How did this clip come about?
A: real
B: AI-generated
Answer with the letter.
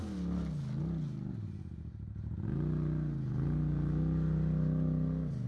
A